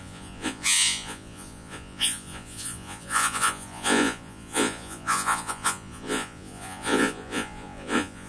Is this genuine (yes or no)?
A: no